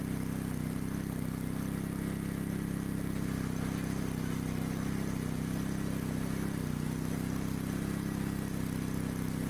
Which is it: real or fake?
real